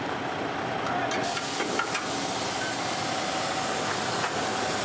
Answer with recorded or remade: recorded